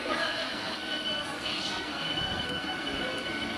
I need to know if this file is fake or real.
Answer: fake